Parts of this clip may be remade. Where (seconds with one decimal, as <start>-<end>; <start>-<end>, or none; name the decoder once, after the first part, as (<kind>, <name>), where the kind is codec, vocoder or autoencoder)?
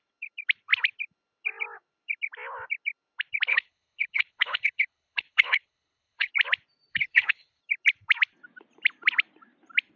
3.5-6.3 (codec, HILCodec); 6.9-7.6